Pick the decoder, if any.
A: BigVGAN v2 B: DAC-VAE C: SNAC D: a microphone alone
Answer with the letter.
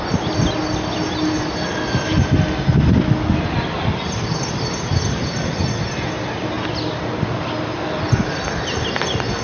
D